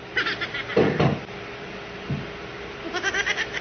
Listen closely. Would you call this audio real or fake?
fake